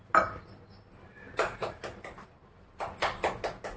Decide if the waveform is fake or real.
real